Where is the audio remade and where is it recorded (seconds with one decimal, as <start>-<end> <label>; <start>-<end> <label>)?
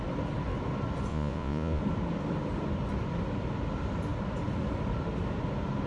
0.0-1.1 recorded; 1.1-1.8 remade; 1.8-5.9 recorded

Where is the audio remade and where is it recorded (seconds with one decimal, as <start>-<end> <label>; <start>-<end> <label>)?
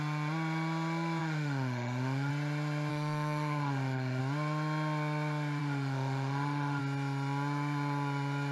0.0-1.2 recorded; 1.2-2.3 remade; 2.3-2.9 recorded; 2.9-4.2 remade; 4.2-5.6 recorded; 5.6-6.8 remade; 6.8-8.5 recorded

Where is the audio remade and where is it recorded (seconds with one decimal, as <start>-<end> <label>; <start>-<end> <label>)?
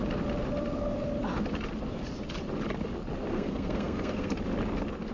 0.0-3.3 recorded; 3.3-4.3 remade; 4.3-5.1 recorded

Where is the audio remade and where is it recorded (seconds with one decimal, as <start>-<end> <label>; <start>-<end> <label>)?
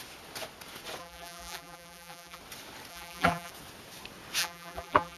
0.0-1.0 recorded; 1.0-2.4 remade; 2.4-2.9 recorded; 2.9-3.5 remade; 3.5-4.4 recorded; 4.4-5.2 remade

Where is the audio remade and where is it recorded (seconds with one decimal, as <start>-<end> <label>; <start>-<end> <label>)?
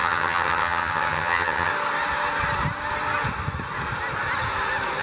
0.0-1.7 remade; 1.7-5.0 recorded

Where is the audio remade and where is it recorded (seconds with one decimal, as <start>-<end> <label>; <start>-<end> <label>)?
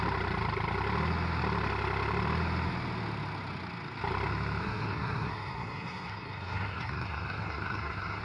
0.0-4.6 recorded; 4.6-8.2 remade